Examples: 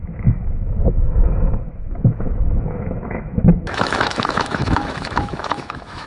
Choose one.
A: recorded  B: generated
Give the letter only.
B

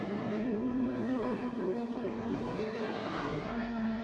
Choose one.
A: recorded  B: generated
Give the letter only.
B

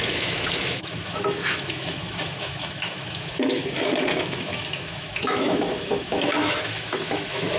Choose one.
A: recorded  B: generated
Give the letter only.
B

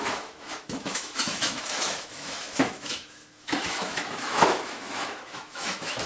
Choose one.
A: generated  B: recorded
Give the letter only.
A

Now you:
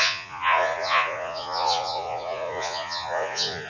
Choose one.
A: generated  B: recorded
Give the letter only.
A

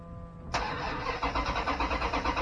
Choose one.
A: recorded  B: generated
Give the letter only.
A